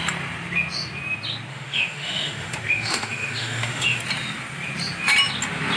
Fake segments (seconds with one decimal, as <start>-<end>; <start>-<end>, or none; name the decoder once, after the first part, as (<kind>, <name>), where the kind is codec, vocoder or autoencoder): 1.5-4.0 (autoencoder, DAC-VAE)